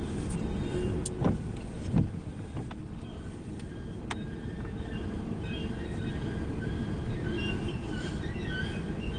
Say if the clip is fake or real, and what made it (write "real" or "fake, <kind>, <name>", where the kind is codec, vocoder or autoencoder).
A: real